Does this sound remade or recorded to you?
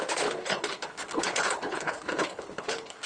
remade